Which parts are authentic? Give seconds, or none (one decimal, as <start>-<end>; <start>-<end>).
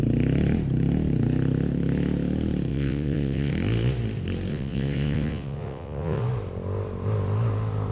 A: 0.0-2.7; 3.5-4.5; 6.2-7.9